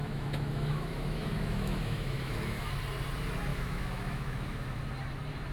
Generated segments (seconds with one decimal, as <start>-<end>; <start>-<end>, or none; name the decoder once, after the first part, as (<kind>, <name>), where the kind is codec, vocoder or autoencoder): 0.0-2.7 (autoencoder, DAC-VAE); 3.5-4.8